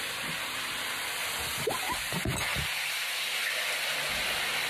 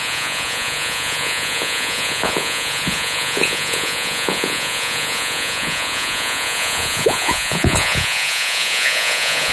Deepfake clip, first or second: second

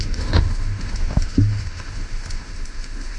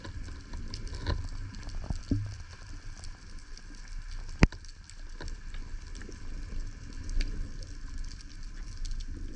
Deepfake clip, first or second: first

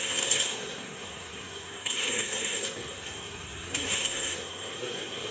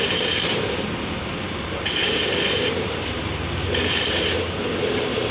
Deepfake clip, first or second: first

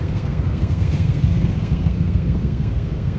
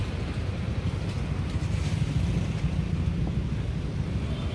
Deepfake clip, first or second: first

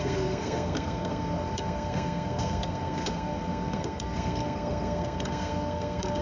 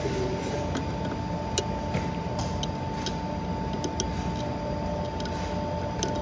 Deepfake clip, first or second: first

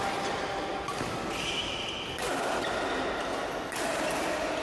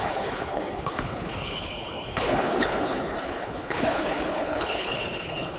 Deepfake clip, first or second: second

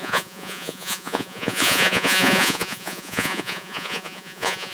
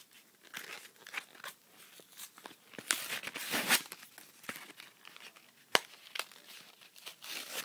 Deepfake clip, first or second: first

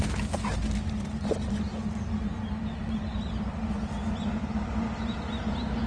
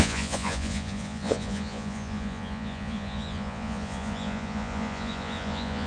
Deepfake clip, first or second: second